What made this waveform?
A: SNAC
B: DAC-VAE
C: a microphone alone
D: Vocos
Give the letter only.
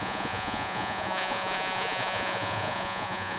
D